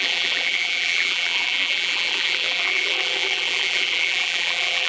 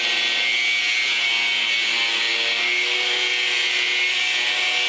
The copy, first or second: first